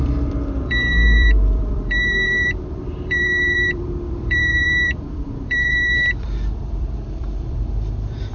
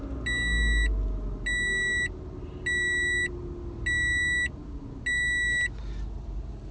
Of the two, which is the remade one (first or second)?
first